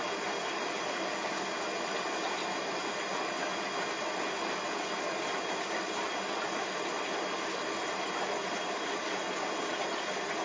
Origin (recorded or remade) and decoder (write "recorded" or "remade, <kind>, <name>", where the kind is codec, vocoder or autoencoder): recorded